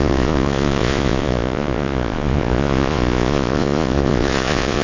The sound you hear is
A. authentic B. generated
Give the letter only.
B